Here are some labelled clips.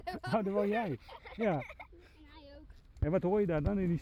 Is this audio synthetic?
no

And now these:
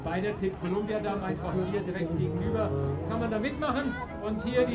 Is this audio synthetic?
no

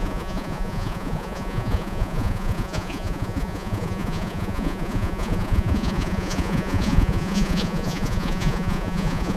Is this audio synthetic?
yes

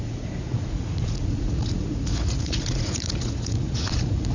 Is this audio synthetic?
yes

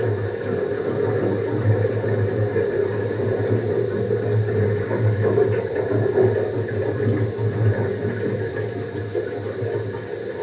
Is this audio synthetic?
no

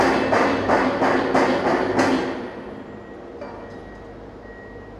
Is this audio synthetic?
no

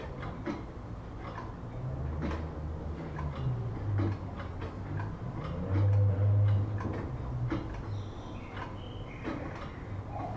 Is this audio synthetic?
no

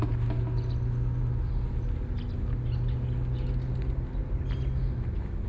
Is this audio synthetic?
no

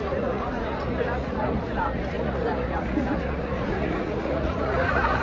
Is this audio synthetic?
yes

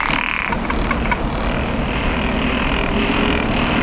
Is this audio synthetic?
no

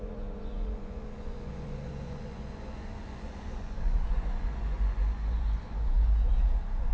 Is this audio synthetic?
yes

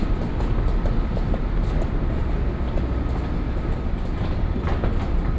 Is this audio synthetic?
no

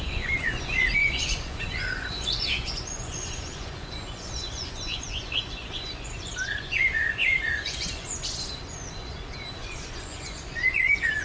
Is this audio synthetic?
yes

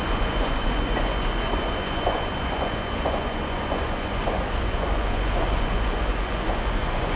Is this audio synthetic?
yes